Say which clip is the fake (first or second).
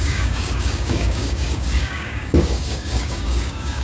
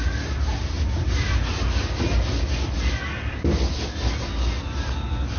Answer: first